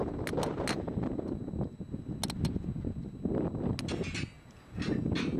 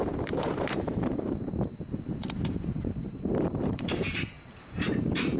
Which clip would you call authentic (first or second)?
first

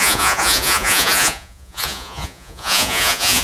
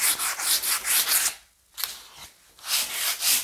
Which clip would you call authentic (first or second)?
second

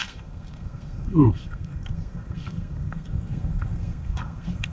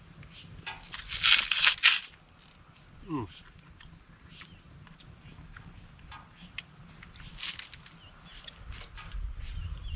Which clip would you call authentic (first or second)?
second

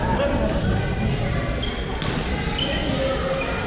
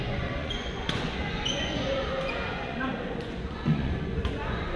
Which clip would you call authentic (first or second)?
first